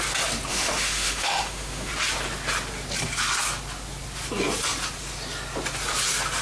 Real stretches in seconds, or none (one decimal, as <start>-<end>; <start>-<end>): 0.0-0.5; 1.9-6.4